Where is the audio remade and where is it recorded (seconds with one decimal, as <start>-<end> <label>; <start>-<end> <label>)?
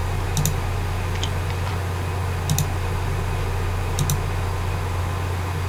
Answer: 0.0-5.7 recorded